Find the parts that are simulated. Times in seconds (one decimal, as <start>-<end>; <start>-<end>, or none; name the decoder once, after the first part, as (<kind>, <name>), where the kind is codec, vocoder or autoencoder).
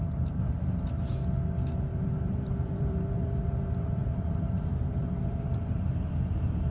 1.9-5.8 (vocoder, BigVGAN v2)